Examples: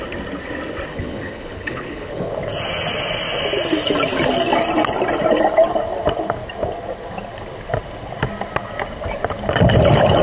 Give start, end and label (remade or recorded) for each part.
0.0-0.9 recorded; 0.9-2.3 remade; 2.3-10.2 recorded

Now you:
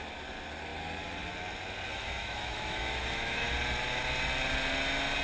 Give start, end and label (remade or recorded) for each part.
0.0-1.9 recorded; 1.9-3.5 remade; 3.5-5.2 recorded